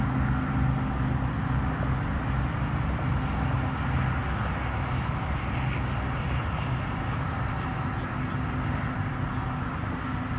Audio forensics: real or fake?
real